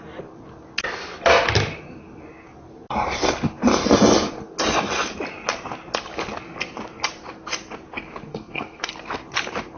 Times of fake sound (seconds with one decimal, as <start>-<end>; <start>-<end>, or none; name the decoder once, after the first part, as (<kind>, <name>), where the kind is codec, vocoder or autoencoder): 8.3-8.9 (codec, SNAC)